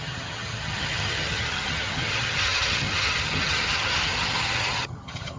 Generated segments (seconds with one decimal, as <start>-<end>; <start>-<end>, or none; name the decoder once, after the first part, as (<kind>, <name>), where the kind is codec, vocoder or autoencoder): 0.0-5.4 (vocoder, HiFi-GAN)